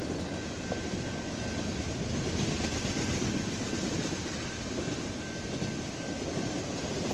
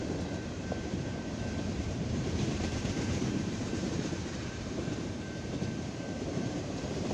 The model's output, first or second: second